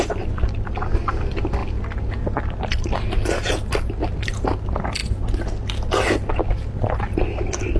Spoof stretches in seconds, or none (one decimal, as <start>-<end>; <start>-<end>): none